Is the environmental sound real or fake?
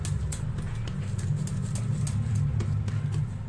real